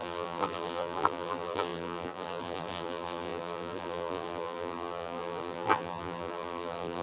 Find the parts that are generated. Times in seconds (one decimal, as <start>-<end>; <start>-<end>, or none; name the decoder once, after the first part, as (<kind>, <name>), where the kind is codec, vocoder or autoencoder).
0.0-7.0 (vocoder, BigVGAN v2)